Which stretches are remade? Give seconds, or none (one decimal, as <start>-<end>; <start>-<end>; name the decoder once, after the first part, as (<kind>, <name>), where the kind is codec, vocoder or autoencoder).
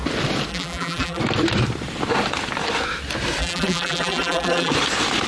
0.5-1.2 (vocoder, BigVGAN v2); 3.4-4.7